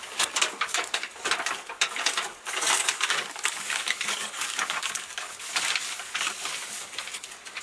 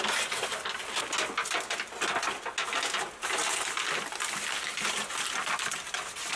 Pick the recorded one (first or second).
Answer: second